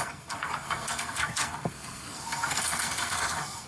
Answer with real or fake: fake